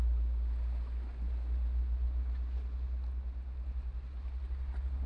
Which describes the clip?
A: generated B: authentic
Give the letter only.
B